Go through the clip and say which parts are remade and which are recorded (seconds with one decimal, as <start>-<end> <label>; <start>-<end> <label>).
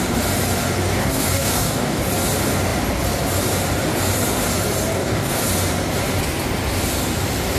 0.0-1.0 recorded; 1.0-2.0 remade; 2.0-4.9 recorded; 4.9-5.4 remade; 5.4-7.6 recorded